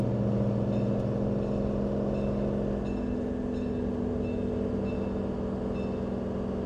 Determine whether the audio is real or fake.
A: real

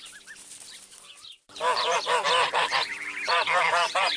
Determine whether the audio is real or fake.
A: fake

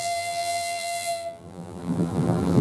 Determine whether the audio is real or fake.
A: fake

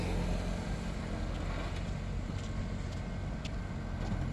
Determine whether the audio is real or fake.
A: real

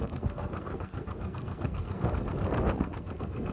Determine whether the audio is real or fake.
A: fake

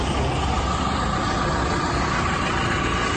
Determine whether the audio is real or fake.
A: real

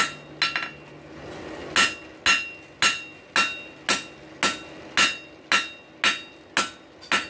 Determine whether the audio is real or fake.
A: real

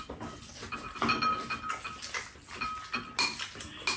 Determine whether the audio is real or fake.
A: real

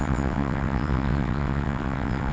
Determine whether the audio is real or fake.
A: fake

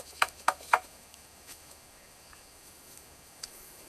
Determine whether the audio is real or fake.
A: fake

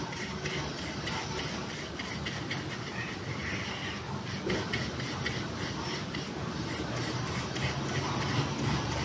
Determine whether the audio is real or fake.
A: real